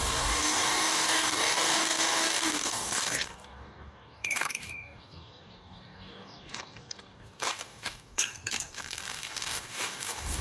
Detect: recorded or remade remade